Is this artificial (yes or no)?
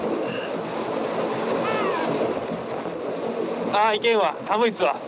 no